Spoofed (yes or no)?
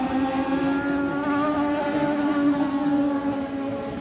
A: no